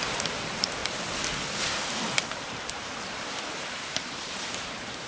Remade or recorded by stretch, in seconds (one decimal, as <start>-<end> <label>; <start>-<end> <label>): 0.0-0.8 remade; 0.8-2.2 recorded; 2.2-5.1 remade